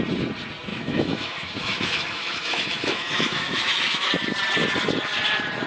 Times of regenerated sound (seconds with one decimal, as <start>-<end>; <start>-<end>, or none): 0.7-4.1